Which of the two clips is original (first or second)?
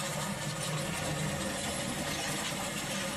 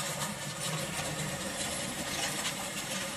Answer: first